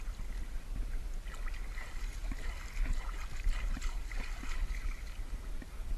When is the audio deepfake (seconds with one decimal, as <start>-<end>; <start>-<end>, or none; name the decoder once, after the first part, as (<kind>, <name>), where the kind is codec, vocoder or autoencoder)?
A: none